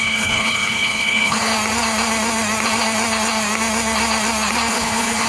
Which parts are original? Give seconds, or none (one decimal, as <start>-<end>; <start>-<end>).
1.5-4.7